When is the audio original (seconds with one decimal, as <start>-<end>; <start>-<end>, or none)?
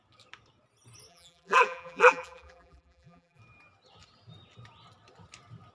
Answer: 0.0-1.1; 3.4-5.7